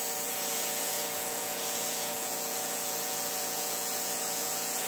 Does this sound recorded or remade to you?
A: remade